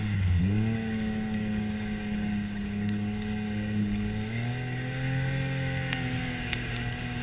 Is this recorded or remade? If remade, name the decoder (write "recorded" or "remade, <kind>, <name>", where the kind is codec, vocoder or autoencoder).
remade, codec, DAC